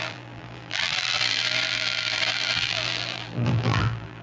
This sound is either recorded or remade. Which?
remade